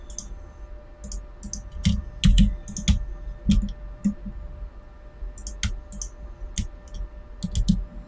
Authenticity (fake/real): real